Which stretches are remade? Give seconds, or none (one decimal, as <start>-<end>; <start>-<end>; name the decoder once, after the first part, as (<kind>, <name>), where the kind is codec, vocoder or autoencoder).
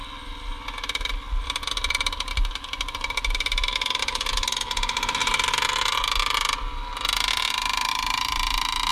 none